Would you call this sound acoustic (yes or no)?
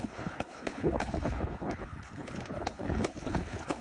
no